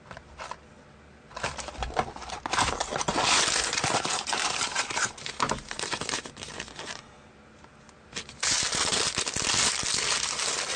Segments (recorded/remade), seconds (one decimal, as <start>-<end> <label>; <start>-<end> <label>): 0.0-10.8 recorded